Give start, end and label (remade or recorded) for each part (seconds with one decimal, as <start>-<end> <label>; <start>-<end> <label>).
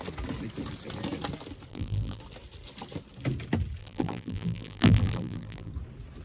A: 0.0-1.7 recorded; 1.7-2.2 remade; 2.2-3.8 recorded; 3.8-5.7 remade; 5.7-6.2 recorded